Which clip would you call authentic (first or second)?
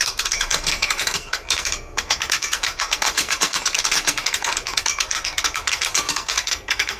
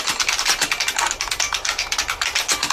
second